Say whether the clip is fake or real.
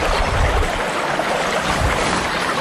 real